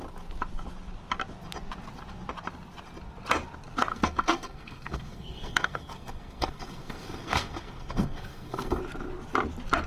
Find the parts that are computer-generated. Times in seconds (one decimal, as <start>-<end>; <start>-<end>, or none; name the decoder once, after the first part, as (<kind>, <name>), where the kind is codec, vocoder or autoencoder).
3.9-8.8 (codec, SNAC)